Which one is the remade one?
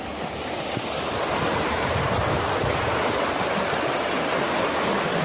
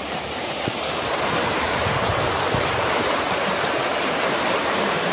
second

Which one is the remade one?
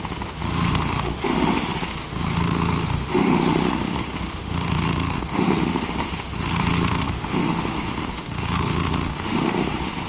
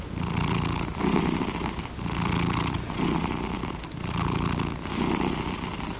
first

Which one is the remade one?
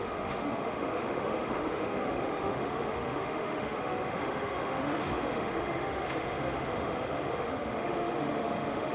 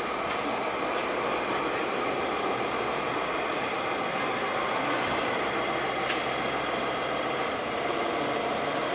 first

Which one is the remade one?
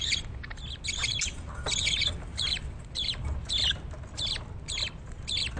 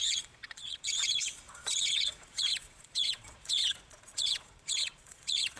second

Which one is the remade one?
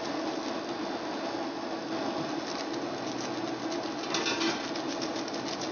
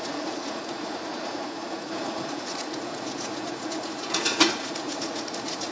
second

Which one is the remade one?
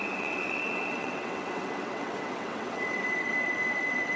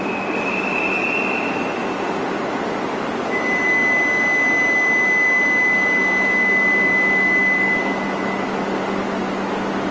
first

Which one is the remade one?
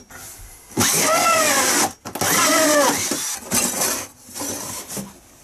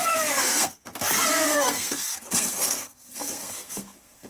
second